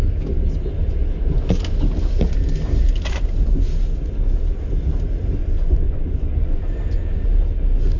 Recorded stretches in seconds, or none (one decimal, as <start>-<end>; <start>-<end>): 0.0-5.4; 6.6-8.0